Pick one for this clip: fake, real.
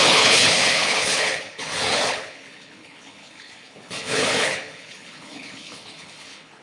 fake